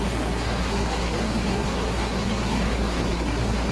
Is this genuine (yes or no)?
no